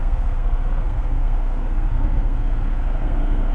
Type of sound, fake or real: fake